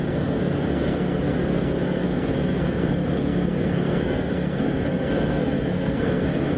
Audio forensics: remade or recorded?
remade